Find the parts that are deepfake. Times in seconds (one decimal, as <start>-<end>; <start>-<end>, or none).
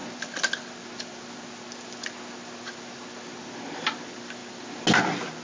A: none